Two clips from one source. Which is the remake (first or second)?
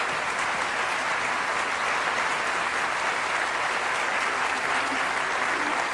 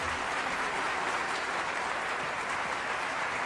second